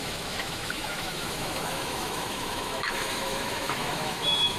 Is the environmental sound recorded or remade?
remade